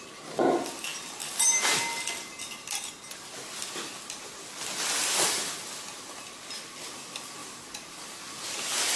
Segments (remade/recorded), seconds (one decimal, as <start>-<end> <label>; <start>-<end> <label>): 0.0-7.4 recorded; 7.4-8.1 remade; 8.1-9.0 recorded